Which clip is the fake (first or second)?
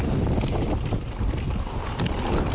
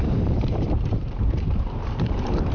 second